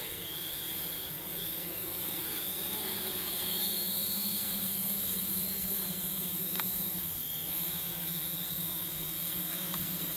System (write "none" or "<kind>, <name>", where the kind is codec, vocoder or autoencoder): codec, SNAC